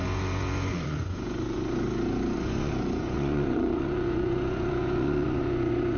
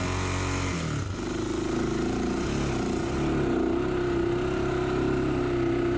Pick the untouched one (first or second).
second